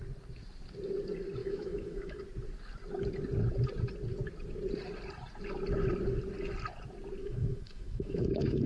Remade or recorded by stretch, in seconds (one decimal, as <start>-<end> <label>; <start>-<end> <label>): 0.0-1.4 recorded; 1.4-2.2 remade; 2.2-7.2 recorded; 7.2-8.7 remade